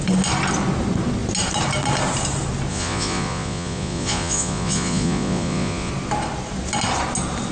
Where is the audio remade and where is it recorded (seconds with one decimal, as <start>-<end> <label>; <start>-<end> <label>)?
0.0-2.7 recorded; 2.7-5.9 remade; 5.9-7.5 recorded